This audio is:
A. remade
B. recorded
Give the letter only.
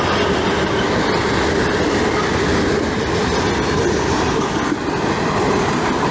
B